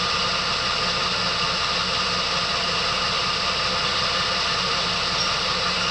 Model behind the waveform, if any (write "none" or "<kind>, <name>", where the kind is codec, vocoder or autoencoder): none